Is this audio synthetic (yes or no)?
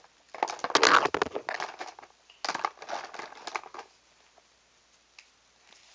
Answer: no